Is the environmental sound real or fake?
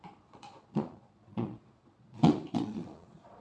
fake